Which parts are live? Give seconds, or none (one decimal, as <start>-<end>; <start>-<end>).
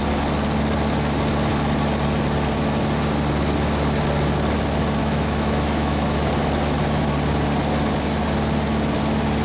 0.0-5.0; 6.3-9.4